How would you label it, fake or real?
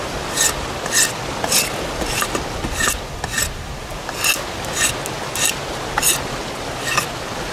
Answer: real